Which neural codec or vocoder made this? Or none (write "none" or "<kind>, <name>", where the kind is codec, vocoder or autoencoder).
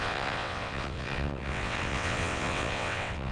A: vocoder, WaveNeXt